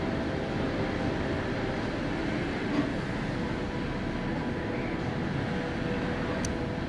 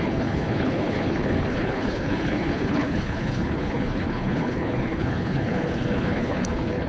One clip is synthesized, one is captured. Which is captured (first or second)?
first